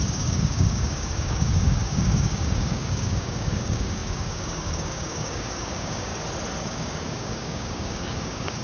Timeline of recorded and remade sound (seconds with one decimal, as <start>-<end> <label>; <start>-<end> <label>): 0.0-6.1 remade; 6.1-6.6 recorded; 6.6-8.6 remade